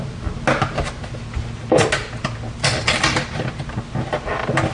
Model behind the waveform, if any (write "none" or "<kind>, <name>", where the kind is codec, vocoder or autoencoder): none